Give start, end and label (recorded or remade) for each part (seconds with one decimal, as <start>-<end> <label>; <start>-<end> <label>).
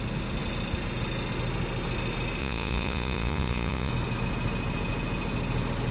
0.0-2.4 recorded; 2.4-3.9 remade; 3.9-5.9 recorded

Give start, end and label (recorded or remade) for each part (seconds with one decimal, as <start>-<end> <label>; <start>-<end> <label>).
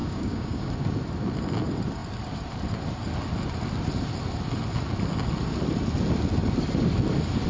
0.0-0.7 remade; 0.7-7.5 recorded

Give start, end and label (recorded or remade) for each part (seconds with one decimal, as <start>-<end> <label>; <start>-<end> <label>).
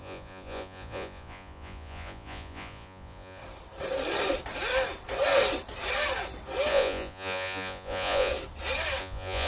0.0-3.4 remade; 3.4-6.7 recorded; 6.7-8.3 remade; 8.3-9.0 recorded; 9.0-9.5 remade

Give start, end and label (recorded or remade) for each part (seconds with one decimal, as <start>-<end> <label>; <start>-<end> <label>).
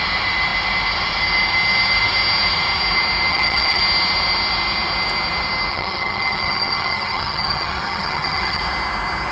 0.0-3.3 recorded; 3.3-3.8 remade; 3.8-5.7 recorded; 5.7-8.6 remade; 8.6-9.3 recorded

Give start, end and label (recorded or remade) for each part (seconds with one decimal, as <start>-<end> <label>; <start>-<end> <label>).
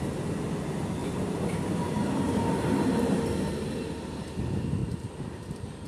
0.0-1.0 recorded; 1.0-3.3 remade; 3.3-4.8 recorded; 4.8-5.9 remade